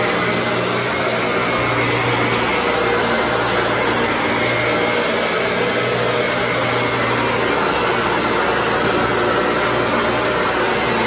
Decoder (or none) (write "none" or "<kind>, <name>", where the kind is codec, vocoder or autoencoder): none